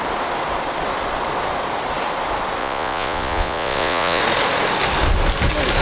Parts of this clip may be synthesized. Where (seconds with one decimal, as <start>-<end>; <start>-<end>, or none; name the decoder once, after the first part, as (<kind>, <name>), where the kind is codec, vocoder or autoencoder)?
2.6-4.2 (vocoder, Vocos)